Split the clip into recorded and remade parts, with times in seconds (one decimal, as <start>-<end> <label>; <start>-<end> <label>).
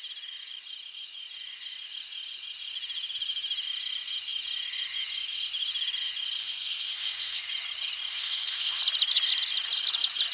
0.0-6.4 recorded; 6.4-7.4 remade; 7.4-8.1 recorded; 8.1-8.8 remade; 8.8-10.3 recorded